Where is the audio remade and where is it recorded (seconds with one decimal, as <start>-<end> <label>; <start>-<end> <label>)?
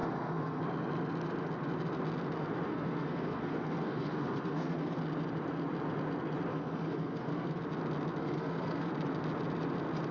0.0-0.6 remade; 0.6-2.7 recorded; 2.7-5.0 remade; 5.0-6.5 recorded; 6.5-7.6 remade; 7.6-8.2 recorded; 8.2-8.9 remade; 8.9-10.1 recorded